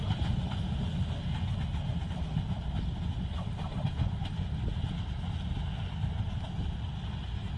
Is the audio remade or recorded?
recorded